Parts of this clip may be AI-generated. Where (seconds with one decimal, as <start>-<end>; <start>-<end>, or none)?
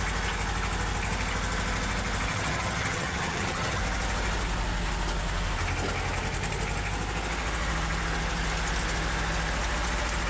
2.3-3.8